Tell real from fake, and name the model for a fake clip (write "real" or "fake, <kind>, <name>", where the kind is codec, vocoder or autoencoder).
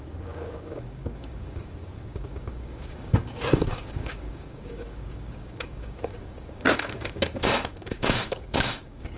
fake, codec, DAC